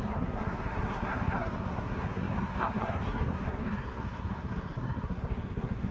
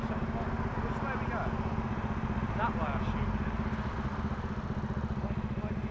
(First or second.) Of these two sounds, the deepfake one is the first